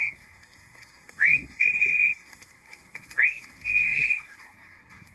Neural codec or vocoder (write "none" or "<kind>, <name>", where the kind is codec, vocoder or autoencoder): codec, SNAC